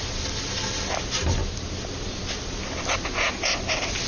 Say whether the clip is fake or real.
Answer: real